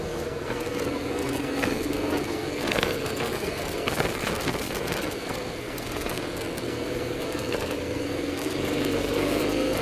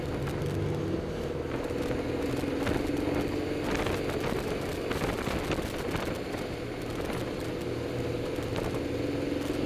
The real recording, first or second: second